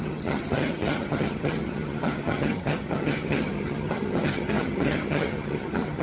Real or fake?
fake